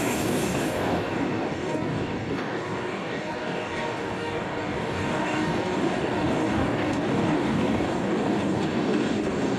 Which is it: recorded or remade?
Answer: remade